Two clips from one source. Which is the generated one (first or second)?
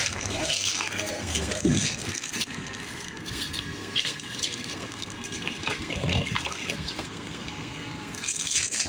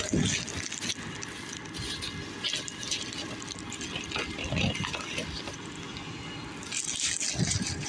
first